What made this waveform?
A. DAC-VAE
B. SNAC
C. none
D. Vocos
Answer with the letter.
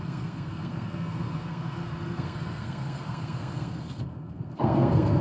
B